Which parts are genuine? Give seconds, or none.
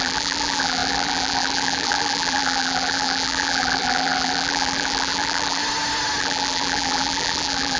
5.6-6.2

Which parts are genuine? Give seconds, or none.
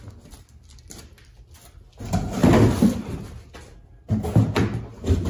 0.0-5.3